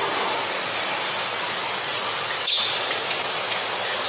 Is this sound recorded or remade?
recorded